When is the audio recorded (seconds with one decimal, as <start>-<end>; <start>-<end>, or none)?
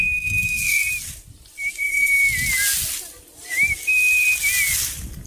0.8-1.8; 2.2-5.3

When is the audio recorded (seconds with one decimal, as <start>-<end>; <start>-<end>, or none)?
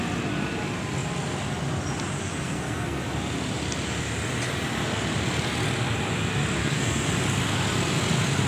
0.0-2.2; 3.0-6.6; 7.1-8.5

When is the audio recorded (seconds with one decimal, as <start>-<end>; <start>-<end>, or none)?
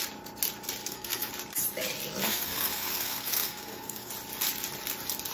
0.0-0.8; 1.3-2.2; 4.1-5.3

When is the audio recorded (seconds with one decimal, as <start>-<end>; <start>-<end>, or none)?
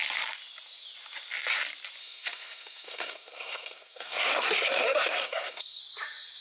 0.0-2.0; 5.8-6.4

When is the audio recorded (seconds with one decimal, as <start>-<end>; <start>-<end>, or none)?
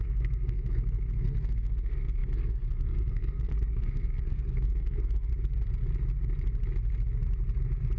5.3-8.0